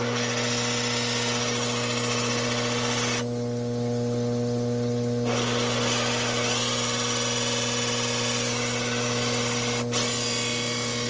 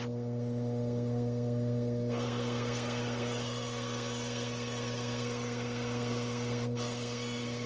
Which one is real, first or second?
first